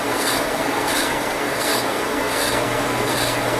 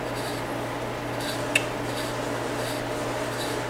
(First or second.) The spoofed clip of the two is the first